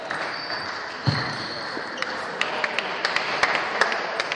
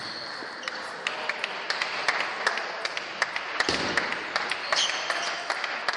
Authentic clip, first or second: second